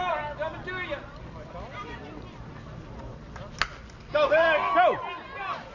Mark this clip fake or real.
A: real